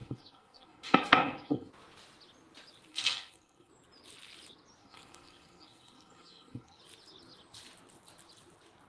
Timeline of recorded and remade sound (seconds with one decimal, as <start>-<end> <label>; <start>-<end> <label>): 0.0-1.7 remade; 1.7-2.9 recorded; 2.9-3.7 remade; 3.7-4.8 recorded; 4.8-6.8 remade; 6.8-8.9 recorded